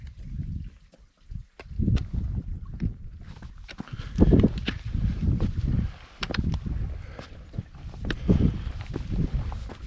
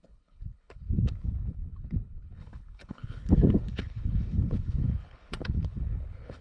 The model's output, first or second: second